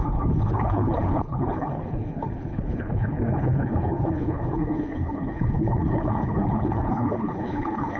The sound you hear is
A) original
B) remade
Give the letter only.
B